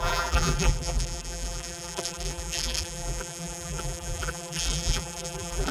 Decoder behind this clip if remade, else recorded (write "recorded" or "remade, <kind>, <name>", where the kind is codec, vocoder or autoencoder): remade, vocoder, BigVGAN v2